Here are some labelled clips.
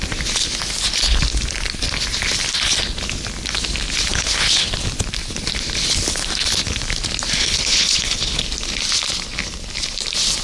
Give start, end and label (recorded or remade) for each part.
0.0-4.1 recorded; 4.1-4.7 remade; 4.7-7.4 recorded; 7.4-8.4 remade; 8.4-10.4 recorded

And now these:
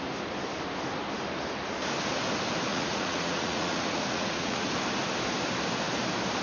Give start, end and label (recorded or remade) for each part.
0.0-2.7 recorded; 2.7-4.7 remade; 4.7-6.4 recorded

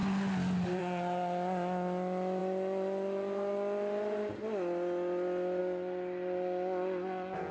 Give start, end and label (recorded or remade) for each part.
0.0-7.5 recorded

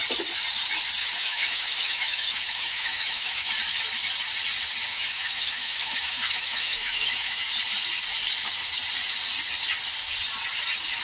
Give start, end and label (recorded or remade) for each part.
0.0-1.0 recorded; 1.0-3.5 remade; 3.5-4.9 recorded; 4.9-7.4 remade; 7.4-11.0 recorded

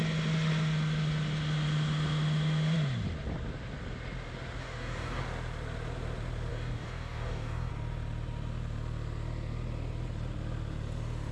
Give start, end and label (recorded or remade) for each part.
0.0-4.6 recorded; 4.6-5.2 remade; 5.2-6.5 recorded; 6.5-7.7 remade; 7.7-11.3 recorded